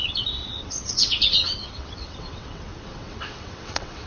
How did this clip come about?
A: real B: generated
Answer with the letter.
B